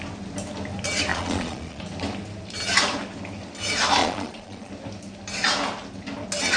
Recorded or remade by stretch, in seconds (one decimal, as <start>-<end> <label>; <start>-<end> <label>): 0.0-1.1 recorded; 1.1-1.8 remade; 1.8-4.0 recorded; 4.0-4.7 remade; 4.7-6.6 recorded